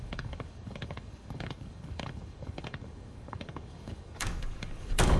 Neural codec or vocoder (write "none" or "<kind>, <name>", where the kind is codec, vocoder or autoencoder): codec, DAC